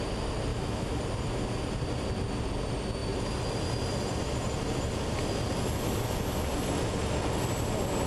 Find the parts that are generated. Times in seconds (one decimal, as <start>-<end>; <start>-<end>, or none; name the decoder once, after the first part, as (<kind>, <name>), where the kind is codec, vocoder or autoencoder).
0.5-1.0 (autoencoder, DAC-VAE)